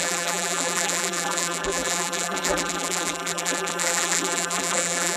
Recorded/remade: remade